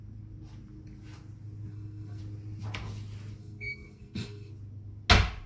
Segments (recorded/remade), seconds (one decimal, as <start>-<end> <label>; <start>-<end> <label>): 0.0-1.7 recorded; 1.7-2.2 remade; 2.2-3.4 recorded; 3.4-4.5 remade; 4.5-5.5 recorded